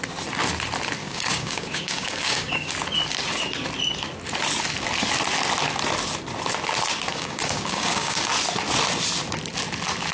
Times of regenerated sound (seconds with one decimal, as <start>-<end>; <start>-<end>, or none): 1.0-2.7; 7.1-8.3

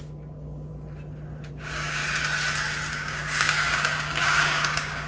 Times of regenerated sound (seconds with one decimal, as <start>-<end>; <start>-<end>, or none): 0.0-0.7; 1.5-2.0; 2.9-5.1

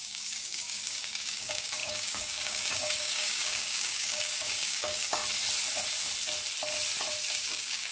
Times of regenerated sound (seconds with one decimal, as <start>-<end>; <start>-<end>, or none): 0.0-5.2; 7.3-7.9